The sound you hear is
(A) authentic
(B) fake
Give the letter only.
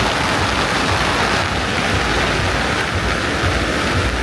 A